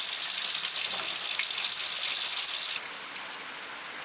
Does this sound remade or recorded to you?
recorded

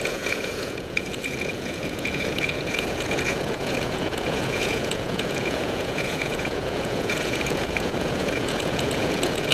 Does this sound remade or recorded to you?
remade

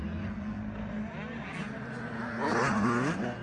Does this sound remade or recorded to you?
recorded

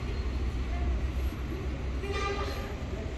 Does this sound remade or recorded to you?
recorded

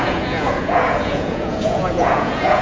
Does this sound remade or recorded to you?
remade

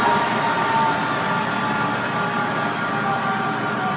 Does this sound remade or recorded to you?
recorded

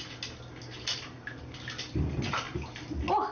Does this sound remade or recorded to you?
recorded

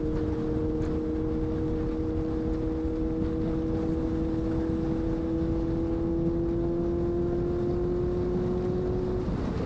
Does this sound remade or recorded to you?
recorded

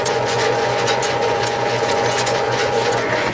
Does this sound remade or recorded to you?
remade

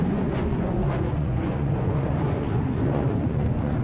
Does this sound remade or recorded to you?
remade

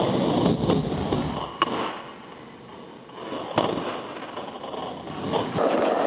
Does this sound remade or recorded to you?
recorded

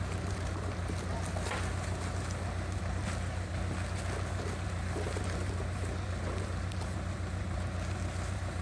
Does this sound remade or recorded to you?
recorded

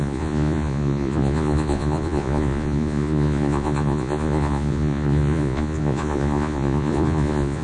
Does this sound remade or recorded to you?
remade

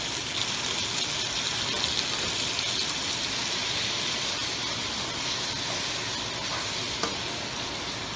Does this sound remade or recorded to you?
recorded